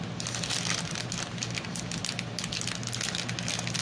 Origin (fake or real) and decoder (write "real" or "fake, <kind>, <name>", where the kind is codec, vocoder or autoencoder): real